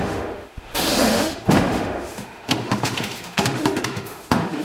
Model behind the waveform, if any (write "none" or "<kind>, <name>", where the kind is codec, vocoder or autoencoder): autoencoder, DAC-VAE